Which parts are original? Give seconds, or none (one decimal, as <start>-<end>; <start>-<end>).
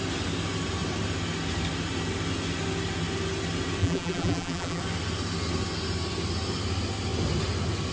0.0-3.8; 4.8-7.9